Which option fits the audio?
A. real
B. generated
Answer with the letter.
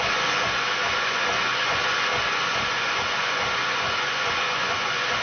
B